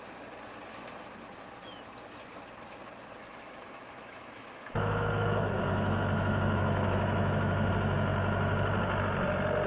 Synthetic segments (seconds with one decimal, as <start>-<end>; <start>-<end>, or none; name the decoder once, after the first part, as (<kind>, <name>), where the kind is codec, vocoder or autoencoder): 3.2-7.7 (autoencoder, DAC-VAE)